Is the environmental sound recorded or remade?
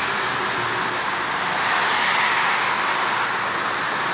recorded